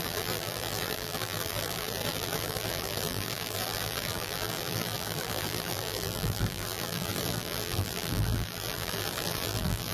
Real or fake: fake